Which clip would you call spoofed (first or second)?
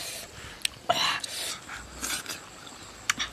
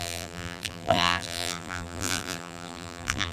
second